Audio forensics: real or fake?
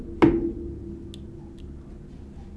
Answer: real